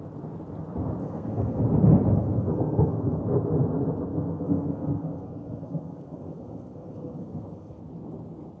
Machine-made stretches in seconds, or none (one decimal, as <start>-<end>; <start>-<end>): 1.0-1.6; 2.2-3.2; 4.1-7.8